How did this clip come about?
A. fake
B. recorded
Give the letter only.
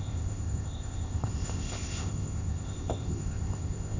A